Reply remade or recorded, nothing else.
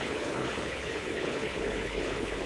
remade